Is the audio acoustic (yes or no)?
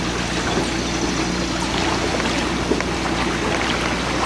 yes